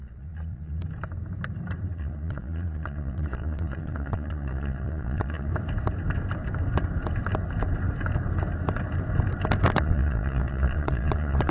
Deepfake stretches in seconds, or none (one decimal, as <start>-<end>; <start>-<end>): 0.0-0.8; 1.9-5.5; 9.8-11.5